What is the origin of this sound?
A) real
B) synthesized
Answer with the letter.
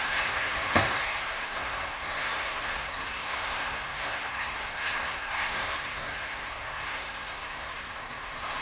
B